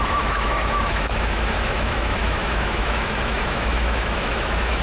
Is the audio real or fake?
fake